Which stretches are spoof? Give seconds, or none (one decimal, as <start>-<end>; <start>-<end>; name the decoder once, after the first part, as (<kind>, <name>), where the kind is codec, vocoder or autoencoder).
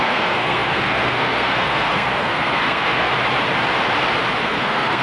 0.0-3.1 (codec, SNAC); 4.4-5.0